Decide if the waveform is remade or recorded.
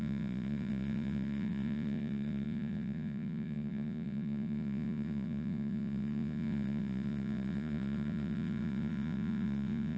remade